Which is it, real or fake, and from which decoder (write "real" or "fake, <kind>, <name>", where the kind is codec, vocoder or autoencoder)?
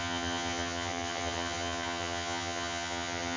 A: fake, vocoder, HiFi-GAN